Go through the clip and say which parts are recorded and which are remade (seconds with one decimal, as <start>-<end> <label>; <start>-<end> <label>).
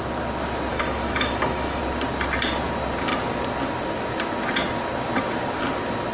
0.0-0.7 recorded; 0.7-1.8 remade; 1.8-6.1 recorded